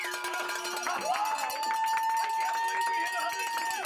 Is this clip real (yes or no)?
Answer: yes